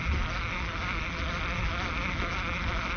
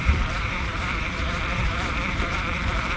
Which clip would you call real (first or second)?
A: first